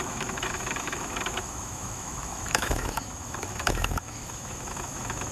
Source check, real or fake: fake